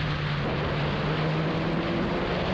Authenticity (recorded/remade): recorded